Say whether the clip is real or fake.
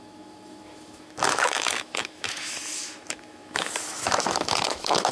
fake